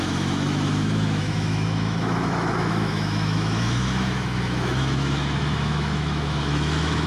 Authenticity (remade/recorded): remade